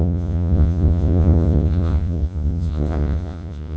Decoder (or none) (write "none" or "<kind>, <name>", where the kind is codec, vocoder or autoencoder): vocoder, Vocos